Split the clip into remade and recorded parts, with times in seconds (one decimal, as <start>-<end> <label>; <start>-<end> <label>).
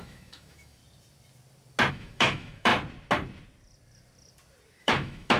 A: 0.0-0.8 remade; 0.8-1.9 recorded; 1.9-2.7 remade; 2.7-4.8 recorded; 4.8-5.4 remade